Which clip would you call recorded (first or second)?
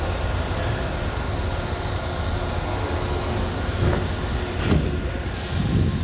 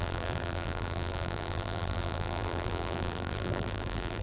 first